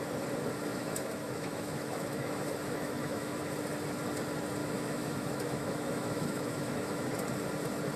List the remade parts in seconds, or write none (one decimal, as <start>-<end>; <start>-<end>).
0.7-3.4; 4.6-7.1